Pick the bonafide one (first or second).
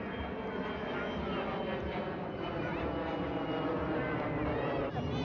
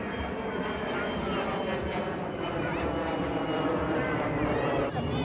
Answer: first